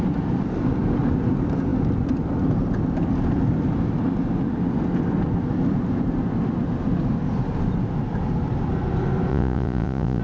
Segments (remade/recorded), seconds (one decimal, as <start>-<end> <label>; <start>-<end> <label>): 0.0-9.3 recorded; 9.3-10.2 remade